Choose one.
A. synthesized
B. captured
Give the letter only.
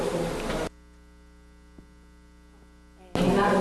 B